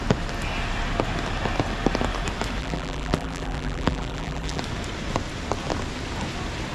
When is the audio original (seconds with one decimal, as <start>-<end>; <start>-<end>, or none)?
0.0-2.6; 4.6-6.7

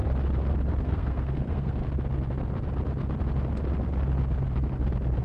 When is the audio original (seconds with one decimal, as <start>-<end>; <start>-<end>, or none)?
0.0-0.8; 1.8-5.2

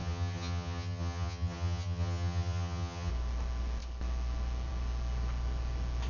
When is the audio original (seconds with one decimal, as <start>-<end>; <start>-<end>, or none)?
3.1-6.1

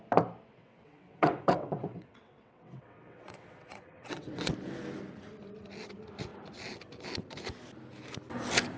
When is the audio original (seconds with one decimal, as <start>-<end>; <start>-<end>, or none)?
0.0-0.6; 4.5-8.8

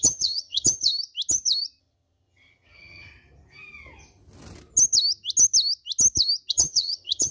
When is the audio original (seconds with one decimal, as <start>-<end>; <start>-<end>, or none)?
0.9-1.8; 3.1-6.5

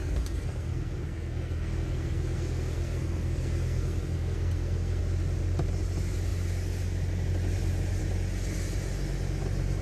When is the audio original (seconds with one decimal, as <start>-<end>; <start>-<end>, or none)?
5.0-9.8